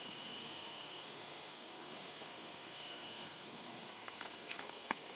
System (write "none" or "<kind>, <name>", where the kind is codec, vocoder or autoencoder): codec, SNAC